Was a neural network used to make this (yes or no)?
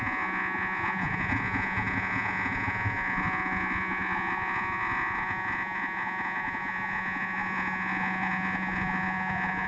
yes